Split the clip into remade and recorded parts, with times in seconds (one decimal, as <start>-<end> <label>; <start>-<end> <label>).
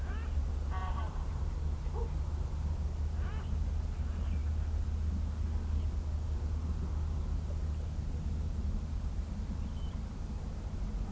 0.0-0.8 recorded; 0.8-1.5 remade; 1.5-11.1 recorded